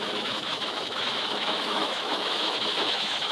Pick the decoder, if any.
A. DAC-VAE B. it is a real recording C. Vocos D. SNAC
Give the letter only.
A